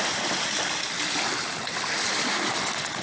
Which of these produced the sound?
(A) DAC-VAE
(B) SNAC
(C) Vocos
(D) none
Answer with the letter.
D